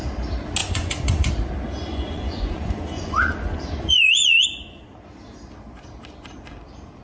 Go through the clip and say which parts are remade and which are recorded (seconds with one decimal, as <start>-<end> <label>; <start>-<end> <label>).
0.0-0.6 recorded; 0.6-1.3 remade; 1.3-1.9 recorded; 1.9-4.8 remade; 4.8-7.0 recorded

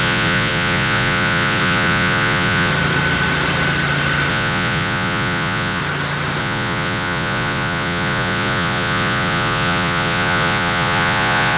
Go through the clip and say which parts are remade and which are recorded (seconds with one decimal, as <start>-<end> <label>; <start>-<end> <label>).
0.0-2.7 remade; 2.7-4.3 recorded; 4.3-5.8 remade; 5.8-6.4 recorded; 6.4-11.6 remade

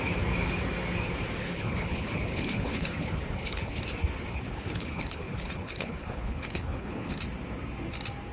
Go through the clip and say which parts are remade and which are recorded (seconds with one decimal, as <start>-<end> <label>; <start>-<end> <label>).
0.0-1.4 recorded; 1.4-3.8 remade; 3.8-4.3 recorded; 4.3-7.2 remade; 7.2-8.3 recorded

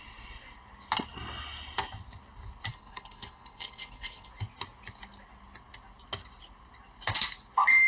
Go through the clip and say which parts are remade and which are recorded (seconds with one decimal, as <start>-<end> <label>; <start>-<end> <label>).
0.0-2.7 recorded; 2.7-4.3 remade; 4.3-7.9 recorded

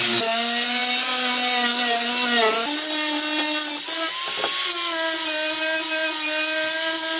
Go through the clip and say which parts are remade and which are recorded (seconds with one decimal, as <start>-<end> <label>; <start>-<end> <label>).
0.0-7.2 recorded